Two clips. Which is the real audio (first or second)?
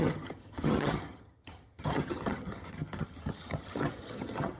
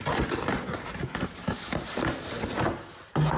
second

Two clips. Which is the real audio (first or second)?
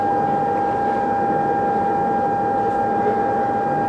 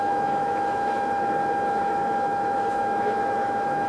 first